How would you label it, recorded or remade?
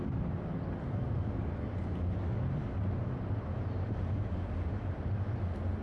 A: recorded